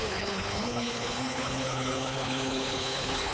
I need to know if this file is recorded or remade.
remade